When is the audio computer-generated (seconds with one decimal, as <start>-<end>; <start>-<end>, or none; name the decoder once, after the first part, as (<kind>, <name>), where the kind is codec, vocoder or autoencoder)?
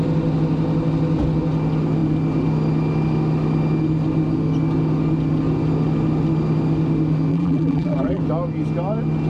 7.3-8.2 (vocoder, BigVGAN v2)